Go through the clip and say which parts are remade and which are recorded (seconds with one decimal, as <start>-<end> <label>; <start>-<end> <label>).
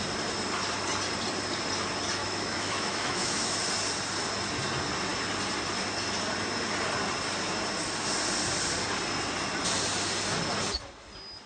0.0-2.2 recorded; 2.2-3.6 remade; 3.6-11.5 recorded